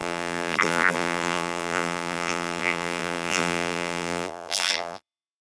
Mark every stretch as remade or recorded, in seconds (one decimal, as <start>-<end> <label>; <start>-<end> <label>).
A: 0.0-5.4 remade